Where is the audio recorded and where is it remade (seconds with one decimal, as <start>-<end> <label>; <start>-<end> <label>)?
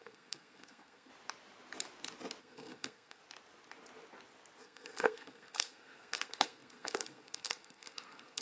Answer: 0.0-1.1 remade; 1.1-2.4 recorded; 2.4-3.2 remade; 3.2-4.6 recorded; 4.6-8.4 remade